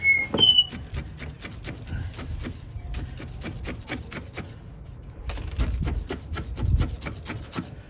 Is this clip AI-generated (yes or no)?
no